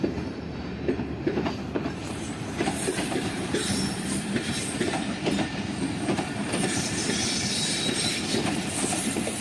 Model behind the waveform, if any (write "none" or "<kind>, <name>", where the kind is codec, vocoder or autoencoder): vocoder, BigVGAN v2